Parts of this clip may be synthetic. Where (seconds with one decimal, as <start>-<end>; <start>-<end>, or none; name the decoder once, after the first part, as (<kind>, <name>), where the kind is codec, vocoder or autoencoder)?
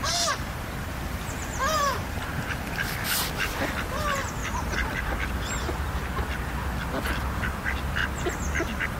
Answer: 0.0-2.0 (vocoder, BigVGAN v2); 4.4-5.0